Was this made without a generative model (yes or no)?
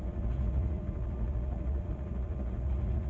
no